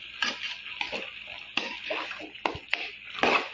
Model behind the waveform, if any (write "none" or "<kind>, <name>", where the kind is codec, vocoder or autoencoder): none